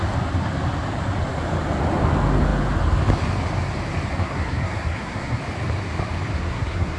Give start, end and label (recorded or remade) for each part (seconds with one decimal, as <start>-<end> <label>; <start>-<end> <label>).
0.0-4.1 recorded; 4.1-5.4 remade; 5.4-6.3 recorded; 6.3-7.0 remade